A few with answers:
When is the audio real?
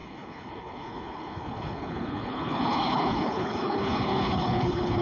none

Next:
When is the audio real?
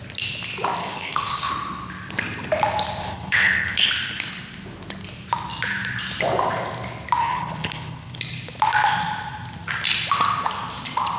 0.0-0.8; 1.5-3.0; 3.9-7.2; 8.2-11.2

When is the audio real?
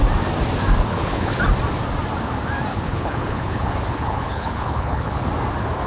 0.0-0.9; 1.4-2.7; 5.3-5.9